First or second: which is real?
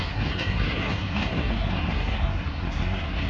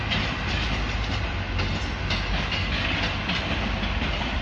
second